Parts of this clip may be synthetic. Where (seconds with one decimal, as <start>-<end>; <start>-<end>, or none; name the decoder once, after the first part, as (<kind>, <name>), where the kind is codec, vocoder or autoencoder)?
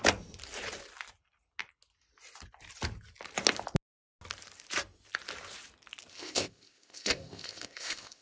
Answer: 6.1-8.2 (codec, ZipCodec)